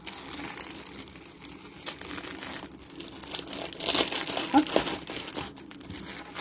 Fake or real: real